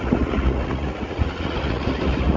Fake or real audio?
fake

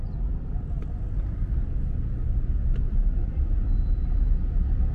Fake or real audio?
real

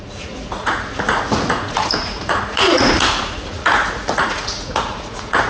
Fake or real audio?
fake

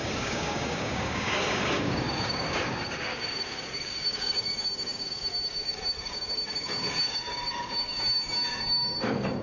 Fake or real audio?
fake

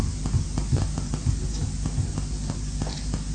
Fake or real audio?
real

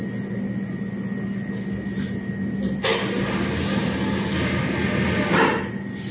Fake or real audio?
real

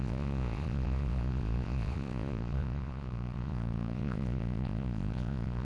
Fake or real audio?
fake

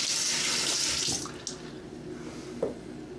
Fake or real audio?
real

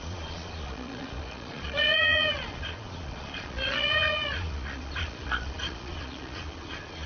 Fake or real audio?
fake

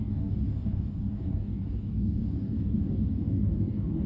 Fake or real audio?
fake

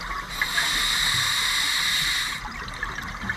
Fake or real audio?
fake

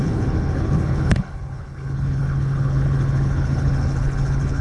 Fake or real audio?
fake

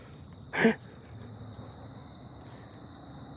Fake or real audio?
real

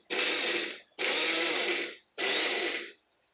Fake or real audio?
real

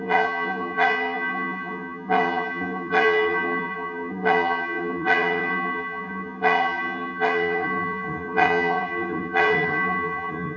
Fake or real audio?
fake